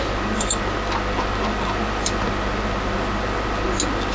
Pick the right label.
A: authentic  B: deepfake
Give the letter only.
A